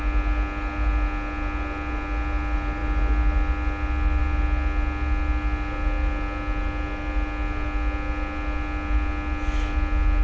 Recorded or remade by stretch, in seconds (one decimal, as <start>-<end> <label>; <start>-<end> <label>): 0.0-10.2 recorded